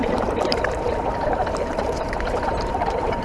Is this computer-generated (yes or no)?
yes